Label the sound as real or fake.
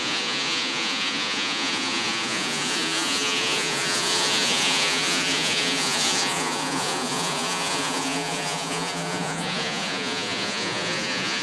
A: fake